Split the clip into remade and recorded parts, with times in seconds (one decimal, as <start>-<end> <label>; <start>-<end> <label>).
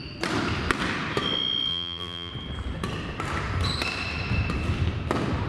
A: 0.0-1.7 recorded; 1.7-2.3 remade; 2.3-5.5 recorded